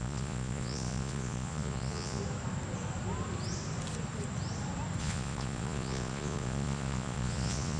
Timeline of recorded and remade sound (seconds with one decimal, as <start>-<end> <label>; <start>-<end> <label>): 0.0-2.2 remade; 2.2-5.0 recorded; 5.0-7.8 remade